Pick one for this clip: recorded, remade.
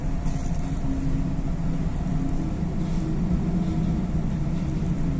recorded